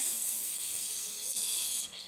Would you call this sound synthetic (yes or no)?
yes